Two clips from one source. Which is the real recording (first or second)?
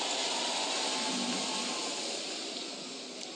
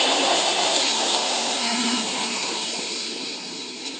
first